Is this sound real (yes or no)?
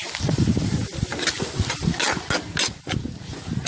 yes